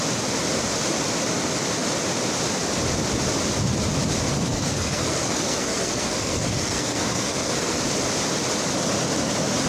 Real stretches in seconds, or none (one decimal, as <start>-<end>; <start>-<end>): 0.0-4.3; 7.8-9.7